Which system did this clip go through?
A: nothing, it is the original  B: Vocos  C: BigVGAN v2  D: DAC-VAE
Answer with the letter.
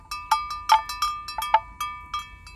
A